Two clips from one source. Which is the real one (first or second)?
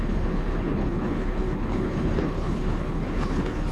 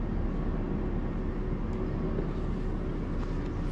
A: second